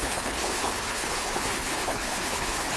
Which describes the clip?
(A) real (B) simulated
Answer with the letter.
B